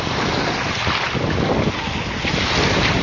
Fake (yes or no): no